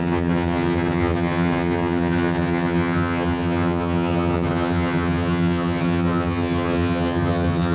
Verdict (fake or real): fake